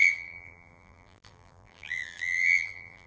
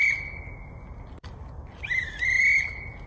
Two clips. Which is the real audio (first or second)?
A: second